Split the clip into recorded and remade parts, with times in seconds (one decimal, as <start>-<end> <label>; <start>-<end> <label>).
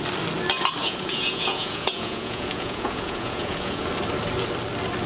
0.0-0.8 recorded; 0.8-3.9 remade; 3.9-5.1 recorded